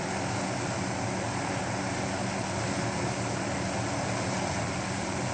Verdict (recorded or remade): recorded